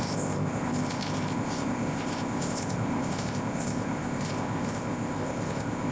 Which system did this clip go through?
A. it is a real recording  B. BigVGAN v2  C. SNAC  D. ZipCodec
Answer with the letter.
D